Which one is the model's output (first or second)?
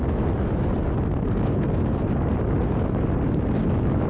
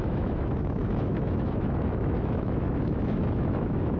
second